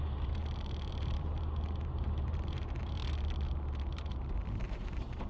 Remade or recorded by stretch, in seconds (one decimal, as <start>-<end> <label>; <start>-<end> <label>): 0.0-0.4 remade; 0.4-0.9 recorded; 0.9-3.0 remade; 3.0-3.8 recorded; 3.8-5.3 remade